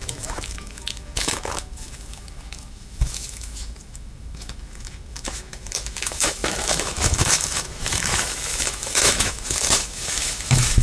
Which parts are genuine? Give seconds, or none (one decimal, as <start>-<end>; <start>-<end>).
none

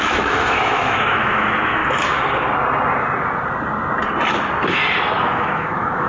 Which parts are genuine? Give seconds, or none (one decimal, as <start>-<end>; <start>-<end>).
1.8-5.2

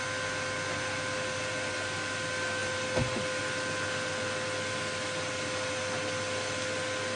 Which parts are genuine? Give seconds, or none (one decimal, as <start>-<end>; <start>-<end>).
0.0-7.2

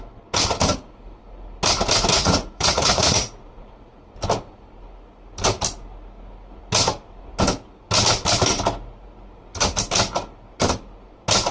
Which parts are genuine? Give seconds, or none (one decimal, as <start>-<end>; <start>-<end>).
0.0-2.1; 4.1-11.5

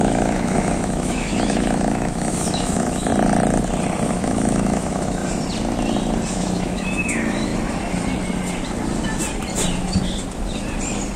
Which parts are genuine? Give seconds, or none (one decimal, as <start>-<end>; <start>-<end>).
3.1-4.1; 5.2-6.3; 7.5-11.2

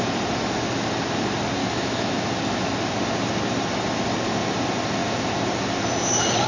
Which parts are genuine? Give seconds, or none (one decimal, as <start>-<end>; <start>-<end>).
0.0-1.6; 2.2-6.5

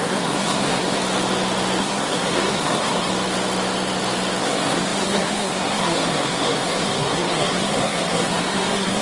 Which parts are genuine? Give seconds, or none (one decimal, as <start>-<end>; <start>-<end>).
1.0-1.8; 3.1-4.4